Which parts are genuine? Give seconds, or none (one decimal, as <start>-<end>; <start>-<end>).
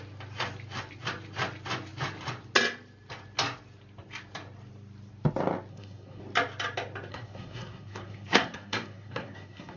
0.0-5.7; 6.2-7.1